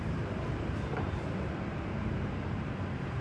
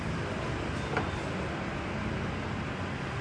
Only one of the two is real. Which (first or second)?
second